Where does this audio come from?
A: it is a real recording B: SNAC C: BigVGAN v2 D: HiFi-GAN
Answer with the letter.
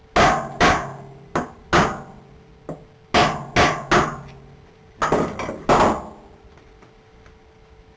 A